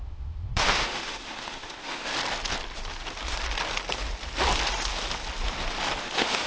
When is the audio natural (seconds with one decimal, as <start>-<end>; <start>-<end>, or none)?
2.1-6.0